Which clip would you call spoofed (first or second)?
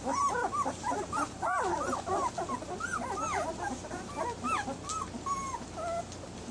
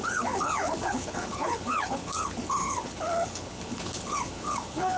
second